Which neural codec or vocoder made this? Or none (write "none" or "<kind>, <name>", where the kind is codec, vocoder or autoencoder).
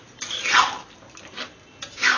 none